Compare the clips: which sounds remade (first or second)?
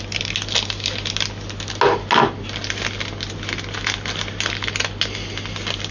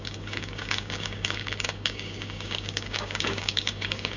second